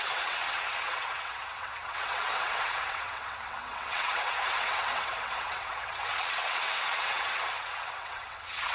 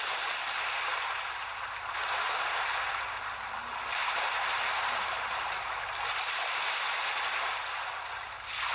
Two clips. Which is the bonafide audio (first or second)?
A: second